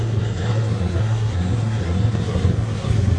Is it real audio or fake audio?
fake